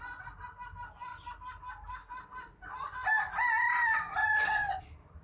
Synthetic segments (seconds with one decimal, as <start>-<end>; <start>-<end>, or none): 4.2-4.8